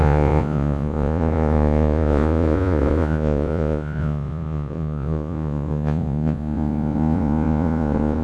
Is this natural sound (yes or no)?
no